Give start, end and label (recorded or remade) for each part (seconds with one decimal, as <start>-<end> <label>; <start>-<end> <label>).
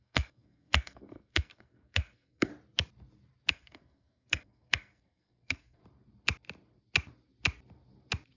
0.0-2.5 remade; 2.5-3.5 recorded; 3.5-5.8 remade; 5.8-8.4 recorded